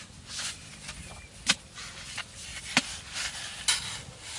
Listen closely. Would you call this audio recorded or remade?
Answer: recorded